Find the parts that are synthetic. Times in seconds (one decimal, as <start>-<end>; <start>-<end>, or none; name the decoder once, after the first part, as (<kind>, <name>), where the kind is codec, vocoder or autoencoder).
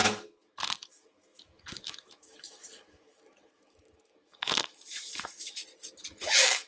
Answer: 0.0-5.6 (autoencoder, DAC-VAE); 6.2-6.7